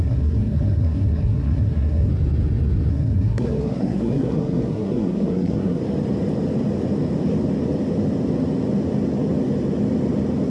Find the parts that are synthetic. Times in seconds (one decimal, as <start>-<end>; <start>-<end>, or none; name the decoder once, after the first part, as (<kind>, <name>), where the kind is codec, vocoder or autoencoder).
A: 0.0-2.1 (codec, SNAC); 2.9-5.8